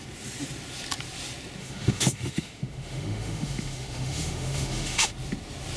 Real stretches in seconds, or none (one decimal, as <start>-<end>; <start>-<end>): 0.0-1.6; 5.1-5.8